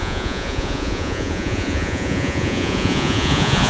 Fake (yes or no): yes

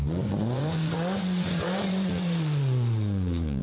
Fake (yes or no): yes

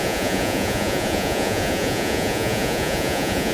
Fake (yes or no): yes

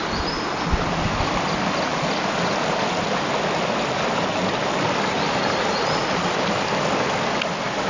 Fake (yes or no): no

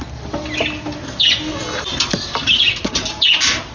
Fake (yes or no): no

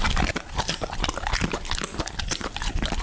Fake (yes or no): no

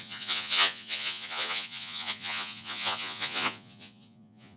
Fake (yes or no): yes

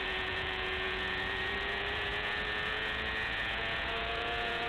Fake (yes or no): yes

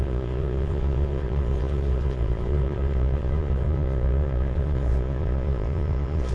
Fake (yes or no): yes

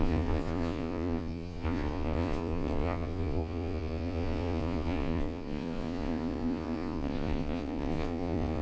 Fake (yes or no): yes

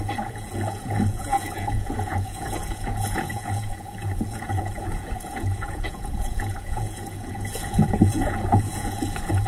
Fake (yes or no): yes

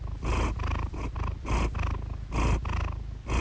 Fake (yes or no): no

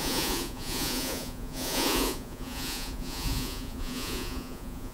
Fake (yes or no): yes